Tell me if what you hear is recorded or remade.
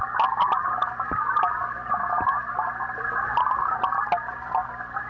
recorded